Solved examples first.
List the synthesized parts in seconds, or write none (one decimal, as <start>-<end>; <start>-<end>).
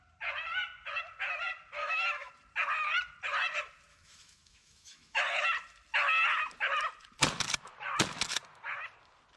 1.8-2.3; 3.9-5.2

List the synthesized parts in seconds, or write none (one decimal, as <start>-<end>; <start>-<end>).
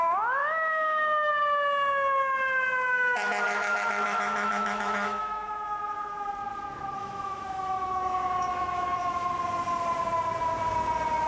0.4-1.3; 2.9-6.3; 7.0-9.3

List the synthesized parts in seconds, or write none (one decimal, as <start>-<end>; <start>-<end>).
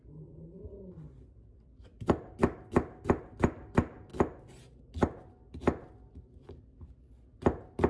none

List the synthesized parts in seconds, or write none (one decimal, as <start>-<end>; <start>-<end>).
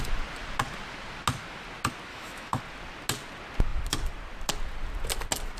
2.1-2.6